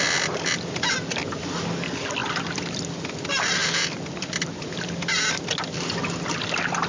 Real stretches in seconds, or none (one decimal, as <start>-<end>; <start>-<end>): 0.0-2.2; 3.1-3.6; 5.5-6.9